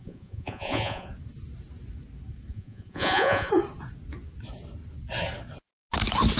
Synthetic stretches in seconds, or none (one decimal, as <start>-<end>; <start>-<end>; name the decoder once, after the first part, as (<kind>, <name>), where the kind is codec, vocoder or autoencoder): 0.0-1.1 (vocoder, Vocos); 2.5-3.5